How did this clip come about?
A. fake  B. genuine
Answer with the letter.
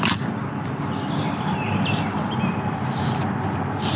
B